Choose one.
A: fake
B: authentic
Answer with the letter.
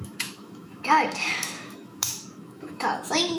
A